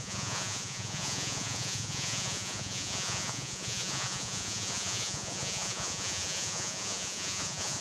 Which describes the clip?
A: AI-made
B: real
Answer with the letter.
A